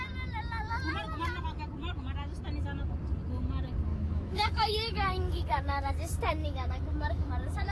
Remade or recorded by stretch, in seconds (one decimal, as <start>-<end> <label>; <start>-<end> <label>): 0.0-3.9 recorded; 3.9-5.9 remade; 5.9-6.4 recorded; 6.4-7.3 remade; 7.3-7.7 recorded